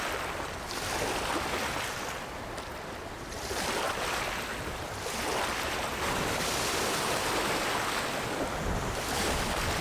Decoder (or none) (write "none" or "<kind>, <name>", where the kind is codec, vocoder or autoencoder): none